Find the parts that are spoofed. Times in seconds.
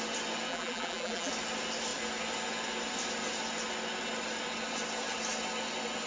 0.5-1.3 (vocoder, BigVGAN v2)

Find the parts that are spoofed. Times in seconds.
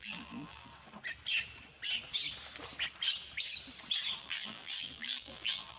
0.0-0.7 (vocoder, BigVGAN v2); 4.2-5.8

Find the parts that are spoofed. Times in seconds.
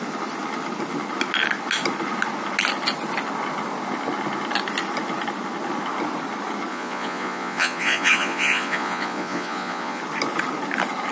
6.7-10.0 (vocoder, Vocos)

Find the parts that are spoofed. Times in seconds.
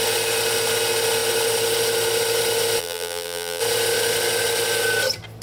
2.8-3.6 (vocoder, BigVGAN v2)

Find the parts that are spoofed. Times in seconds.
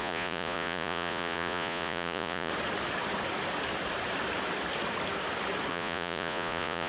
0.0-2.5 (vocoder, Vocos); 5.7-6.9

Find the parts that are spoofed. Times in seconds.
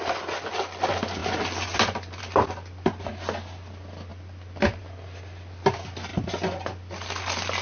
none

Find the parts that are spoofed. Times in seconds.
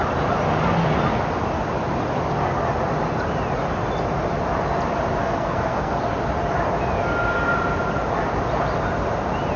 5.2-6.0 (codec, SNAC)